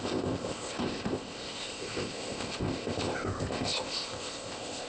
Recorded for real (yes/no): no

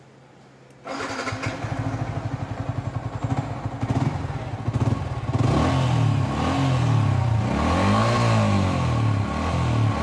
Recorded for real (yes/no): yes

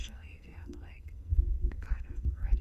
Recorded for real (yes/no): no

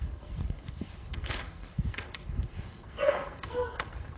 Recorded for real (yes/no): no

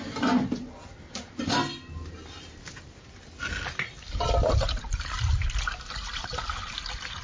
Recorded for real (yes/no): yes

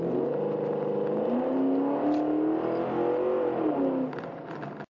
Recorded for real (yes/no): yes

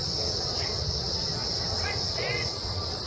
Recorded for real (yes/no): no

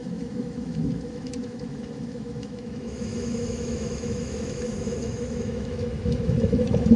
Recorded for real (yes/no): no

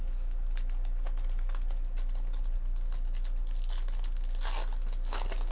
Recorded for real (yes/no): yes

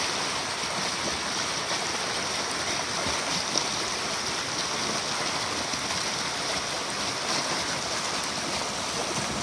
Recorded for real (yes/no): yes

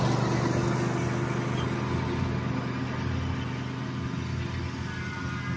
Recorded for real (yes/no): yes